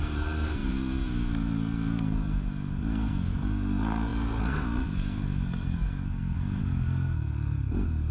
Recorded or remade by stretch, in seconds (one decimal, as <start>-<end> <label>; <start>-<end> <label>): 0.0-8.1 remade